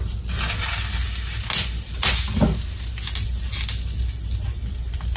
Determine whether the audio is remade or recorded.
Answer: recorded